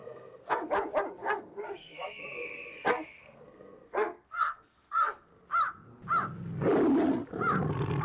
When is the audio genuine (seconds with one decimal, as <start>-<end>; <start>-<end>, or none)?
0.7-1.2; 5.3-8.0